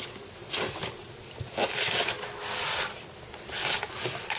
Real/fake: real